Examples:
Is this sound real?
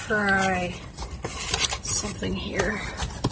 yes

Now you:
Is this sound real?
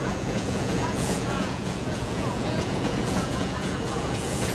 no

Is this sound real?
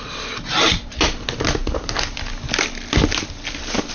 yes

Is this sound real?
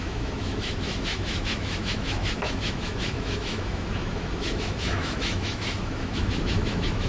no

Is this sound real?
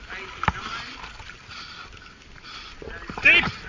yes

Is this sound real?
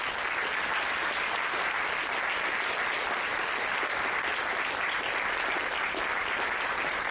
yes